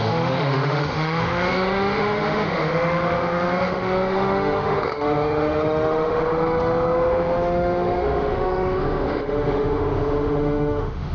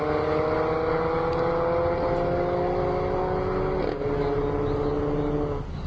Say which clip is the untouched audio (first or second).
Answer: second